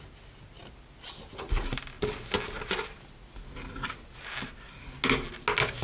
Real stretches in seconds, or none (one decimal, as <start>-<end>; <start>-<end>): 0.0-5.8